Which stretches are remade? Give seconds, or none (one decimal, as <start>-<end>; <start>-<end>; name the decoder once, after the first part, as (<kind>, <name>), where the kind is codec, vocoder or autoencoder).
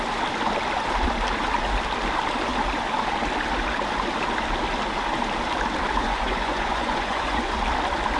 6.0-7.6 (vocoder, Vocos)